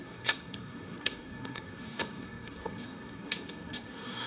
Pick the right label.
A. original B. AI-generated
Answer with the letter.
B